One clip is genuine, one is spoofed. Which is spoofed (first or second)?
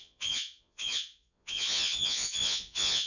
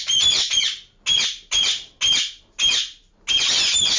first